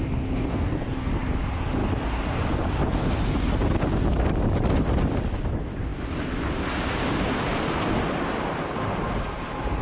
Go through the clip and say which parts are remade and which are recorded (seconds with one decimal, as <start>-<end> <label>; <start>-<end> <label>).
0.0-0.5 recorded; 0.5-1.1 remade; 1.1-9.8 recorded